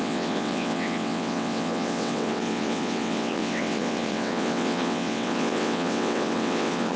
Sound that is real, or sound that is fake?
fake